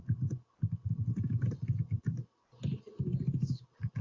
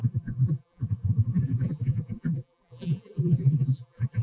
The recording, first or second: first